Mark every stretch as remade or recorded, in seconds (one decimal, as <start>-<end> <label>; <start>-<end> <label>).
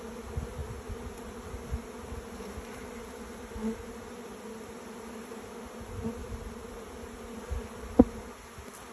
0.0-8.9 recorded